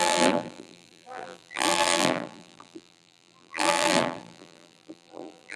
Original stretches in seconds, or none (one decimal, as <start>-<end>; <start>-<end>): none